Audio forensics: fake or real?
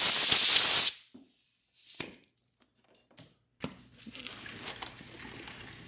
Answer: real